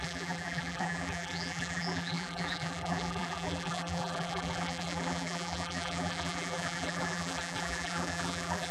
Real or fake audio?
fake